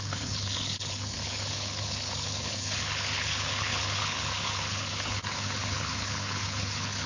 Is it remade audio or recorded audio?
remade